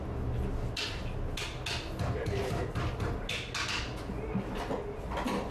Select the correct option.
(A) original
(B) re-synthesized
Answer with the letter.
A